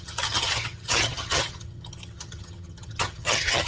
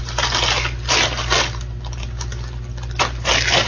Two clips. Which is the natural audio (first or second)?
second